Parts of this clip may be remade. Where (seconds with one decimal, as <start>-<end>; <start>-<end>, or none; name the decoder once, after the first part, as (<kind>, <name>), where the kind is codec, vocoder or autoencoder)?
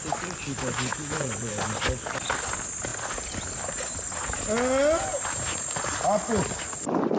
0.9-1.5 (vocoder, BigVGAN v2)